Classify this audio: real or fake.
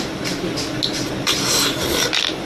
real